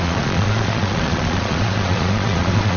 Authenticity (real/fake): fake